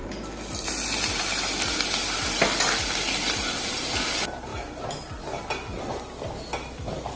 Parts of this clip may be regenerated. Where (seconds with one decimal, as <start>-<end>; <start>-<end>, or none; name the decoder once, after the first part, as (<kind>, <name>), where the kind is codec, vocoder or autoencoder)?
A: none